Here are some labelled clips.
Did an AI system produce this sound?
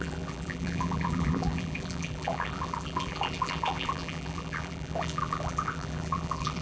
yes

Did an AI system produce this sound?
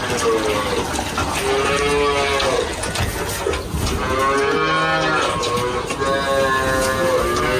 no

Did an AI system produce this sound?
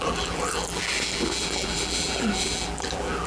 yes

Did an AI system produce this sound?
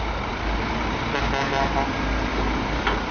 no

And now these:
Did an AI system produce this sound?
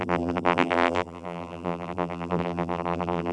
yes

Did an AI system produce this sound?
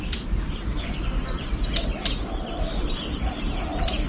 yes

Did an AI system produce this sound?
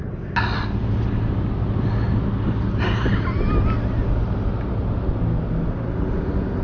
no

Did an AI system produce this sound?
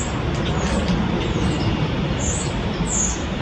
yes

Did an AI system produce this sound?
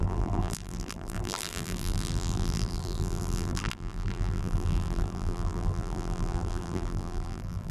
yes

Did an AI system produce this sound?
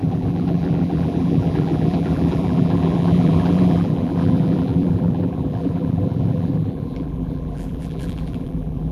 yes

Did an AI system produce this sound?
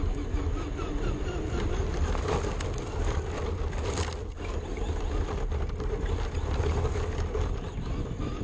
no